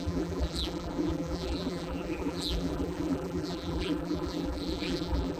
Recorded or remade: remade